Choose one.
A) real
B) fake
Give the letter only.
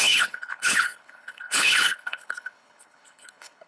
B